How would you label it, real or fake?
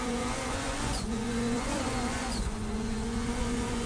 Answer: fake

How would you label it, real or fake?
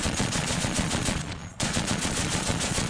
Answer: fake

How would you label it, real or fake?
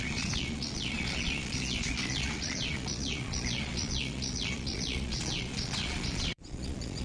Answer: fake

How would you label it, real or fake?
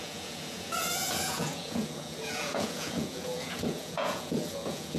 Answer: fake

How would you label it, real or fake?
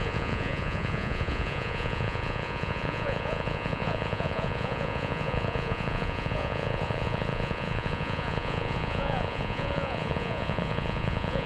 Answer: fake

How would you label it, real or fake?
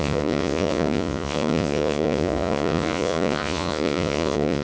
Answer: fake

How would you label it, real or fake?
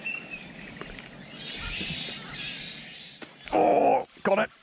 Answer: real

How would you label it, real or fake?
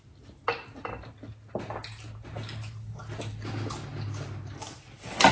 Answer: real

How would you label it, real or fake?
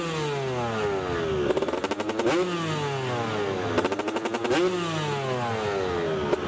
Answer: real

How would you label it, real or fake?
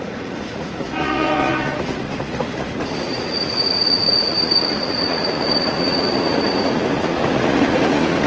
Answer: fake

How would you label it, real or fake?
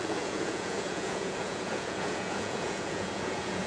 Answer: fake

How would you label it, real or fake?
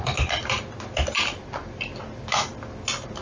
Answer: real